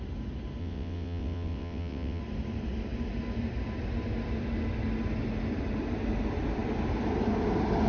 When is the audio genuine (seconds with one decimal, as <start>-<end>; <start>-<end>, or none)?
0.0-0.6; 2.2-7.9